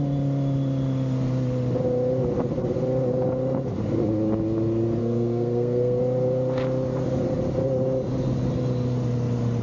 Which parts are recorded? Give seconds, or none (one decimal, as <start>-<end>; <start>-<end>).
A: 0.0-5.0; 6.0-9.6